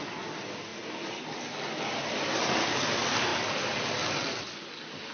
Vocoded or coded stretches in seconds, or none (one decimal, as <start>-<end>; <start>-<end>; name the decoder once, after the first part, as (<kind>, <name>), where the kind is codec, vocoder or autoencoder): none